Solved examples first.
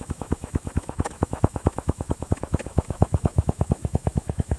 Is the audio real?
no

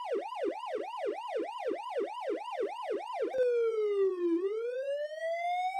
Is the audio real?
yes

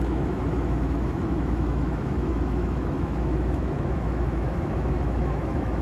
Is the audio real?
no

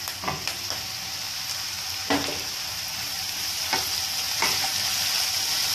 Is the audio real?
yes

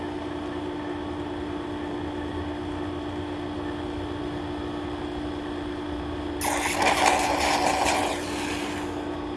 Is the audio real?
yes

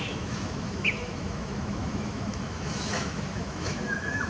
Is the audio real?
no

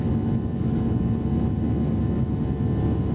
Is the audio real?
yes